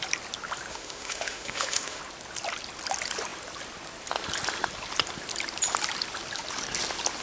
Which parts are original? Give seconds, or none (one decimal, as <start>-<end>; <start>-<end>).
0.0-0.7; 2.0-7.2